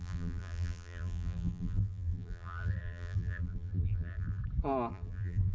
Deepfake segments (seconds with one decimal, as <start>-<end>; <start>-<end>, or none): 0.0-4.4; 4.9-5.5